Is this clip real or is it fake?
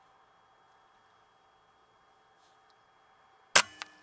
real